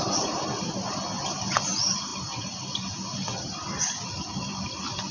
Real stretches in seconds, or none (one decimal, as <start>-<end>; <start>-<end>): 0.0-5.1